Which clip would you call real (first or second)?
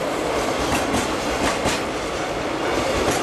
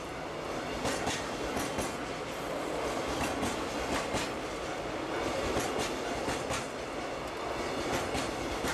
second